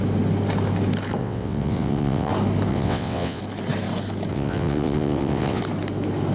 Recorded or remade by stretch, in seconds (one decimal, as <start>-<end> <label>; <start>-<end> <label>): 0.0-1.2 recorded; 1.2-2.3 remade; 2.3-2.7 recorded; 2.7-3.4 remade; 3.4-4.3 recorded; 4.3-5.6 remade; 5.6-6.3 recorded